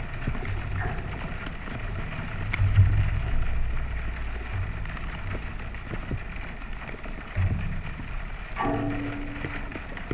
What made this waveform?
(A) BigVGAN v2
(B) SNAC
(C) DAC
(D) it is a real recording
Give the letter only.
D